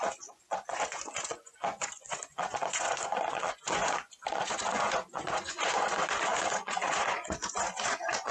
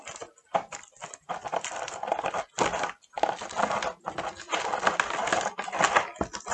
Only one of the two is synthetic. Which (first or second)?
first